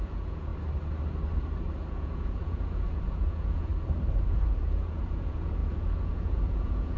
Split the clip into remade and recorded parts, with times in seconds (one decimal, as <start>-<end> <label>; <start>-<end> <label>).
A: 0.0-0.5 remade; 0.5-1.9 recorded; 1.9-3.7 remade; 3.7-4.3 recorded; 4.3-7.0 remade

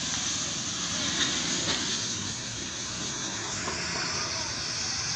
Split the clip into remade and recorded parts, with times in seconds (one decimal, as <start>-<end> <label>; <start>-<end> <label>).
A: 0.0-1.9 recorded; 1.9-3.6 remade; 3.6-5.2 recorded

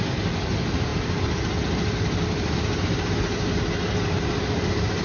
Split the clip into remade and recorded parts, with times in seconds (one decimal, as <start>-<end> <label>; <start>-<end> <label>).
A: 0.0-5.0 recorded